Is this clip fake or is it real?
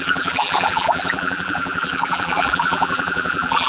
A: fake